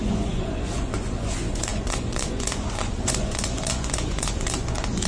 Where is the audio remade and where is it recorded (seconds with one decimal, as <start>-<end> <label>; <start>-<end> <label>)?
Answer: 0.0-5.1 remade